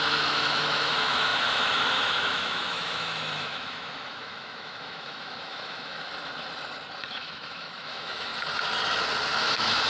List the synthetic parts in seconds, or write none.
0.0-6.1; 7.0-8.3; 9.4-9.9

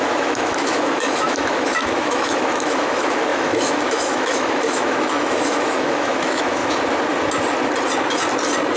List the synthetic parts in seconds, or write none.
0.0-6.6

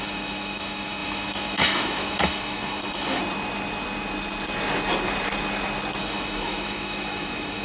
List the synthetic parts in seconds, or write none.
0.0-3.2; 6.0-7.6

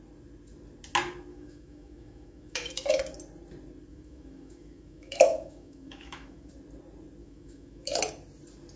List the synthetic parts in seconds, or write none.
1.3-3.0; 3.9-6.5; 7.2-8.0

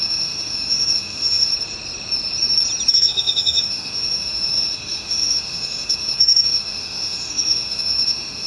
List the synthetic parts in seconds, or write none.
0.0-1.5; 2.9-8.5

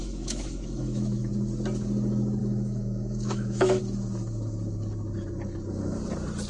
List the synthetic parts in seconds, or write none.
0.0-1.3; 2.4-3.8

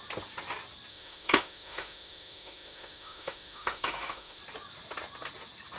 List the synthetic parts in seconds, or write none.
0.9-4.4

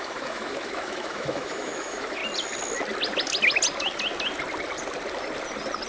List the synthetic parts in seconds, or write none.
0.0-2.2